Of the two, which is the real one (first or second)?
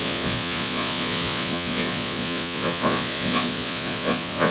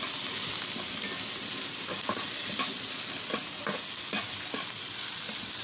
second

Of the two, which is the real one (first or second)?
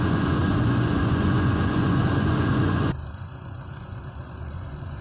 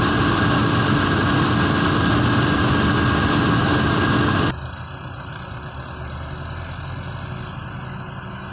second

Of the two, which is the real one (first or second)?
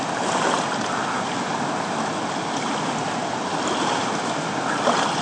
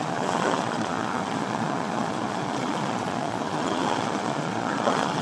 first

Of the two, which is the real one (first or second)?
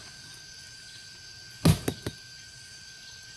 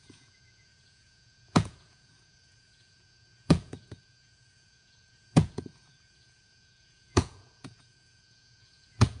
first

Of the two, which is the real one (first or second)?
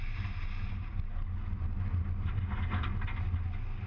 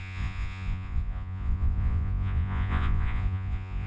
first